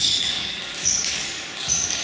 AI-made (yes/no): yes